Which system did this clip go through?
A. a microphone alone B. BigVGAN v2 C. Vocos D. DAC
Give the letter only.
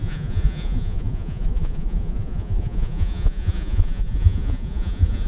C